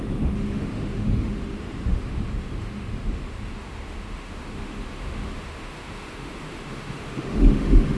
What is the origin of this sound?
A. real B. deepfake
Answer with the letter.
B